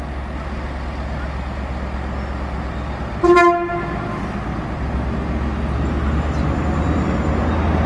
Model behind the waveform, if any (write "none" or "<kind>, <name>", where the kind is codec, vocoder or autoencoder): none